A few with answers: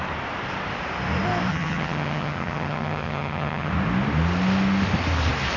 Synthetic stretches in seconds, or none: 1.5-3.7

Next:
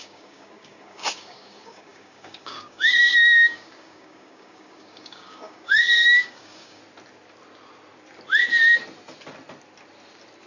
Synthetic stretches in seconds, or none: 0.0-6.8

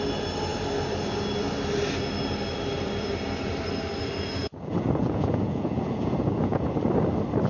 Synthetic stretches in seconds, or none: 4.4-6.7